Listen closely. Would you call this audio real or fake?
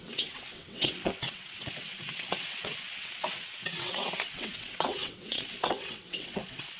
fake